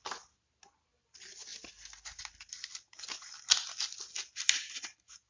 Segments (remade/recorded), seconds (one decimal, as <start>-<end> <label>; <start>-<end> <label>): 0.0-5.3 recorded